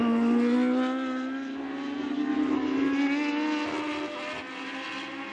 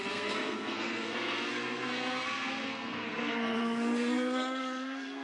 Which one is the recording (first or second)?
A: first